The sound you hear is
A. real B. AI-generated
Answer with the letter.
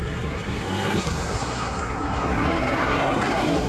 B